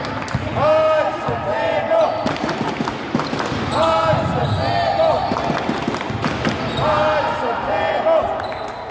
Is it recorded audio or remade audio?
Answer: recorded